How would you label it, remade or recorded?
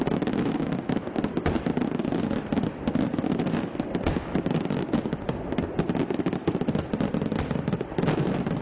recorded